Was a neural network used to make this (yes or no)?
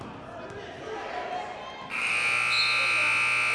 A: no